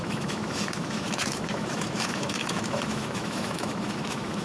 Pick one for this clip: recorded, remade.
remade